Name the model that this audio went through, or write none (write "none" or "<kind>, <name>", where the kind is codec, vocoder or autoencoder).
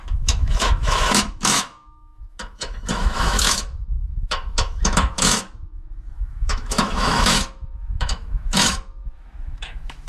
autoencoder, DAC-VAE